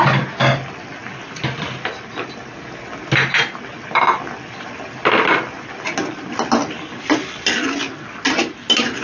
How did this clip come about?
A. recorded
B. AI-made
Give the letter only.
A